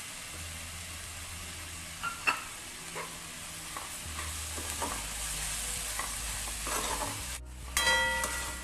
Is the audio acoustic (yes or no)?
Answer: yes